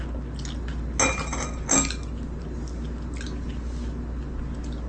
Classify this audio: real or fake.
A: real